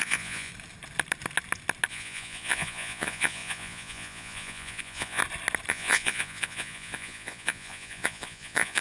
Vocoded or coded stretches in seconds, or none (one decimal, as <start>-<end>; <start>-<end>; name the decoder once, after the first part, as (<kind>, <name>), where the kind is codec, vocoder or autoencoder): 0.0-0.5 (vocoder, Vocos); 1.9-5.2; 5.7-8.8